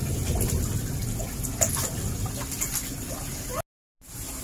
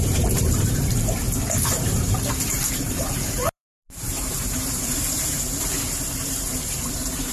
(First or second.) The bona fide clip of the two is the first